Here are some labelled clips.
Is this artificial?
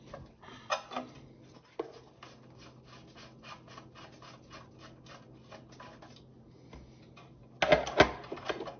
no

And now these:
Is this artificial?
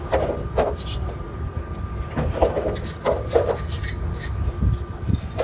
no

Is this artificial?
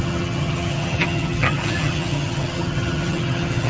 yes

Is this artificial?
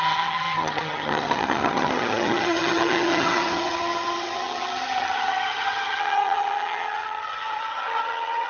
yes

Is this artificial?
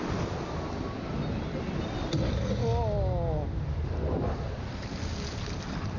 no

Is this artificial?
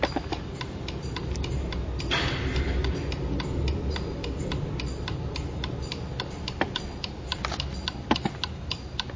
no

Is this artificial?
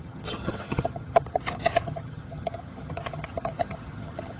yes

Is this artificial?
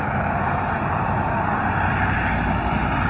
no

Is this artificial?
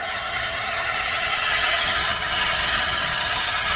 yes